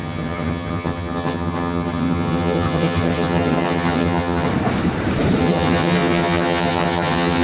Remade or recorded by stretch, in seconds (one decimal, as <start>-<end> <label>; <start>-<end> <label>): 0.0-4.5 remade; 4.5-5.4 recorded; 5.4-7.4 remade